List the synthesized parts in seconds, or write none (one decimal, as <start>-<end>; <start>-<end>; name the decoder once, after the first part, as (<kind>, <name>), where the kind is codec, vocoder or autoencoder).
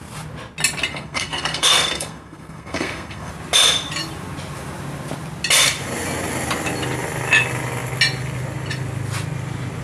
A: 0.9-3.3 (codec, SNAC)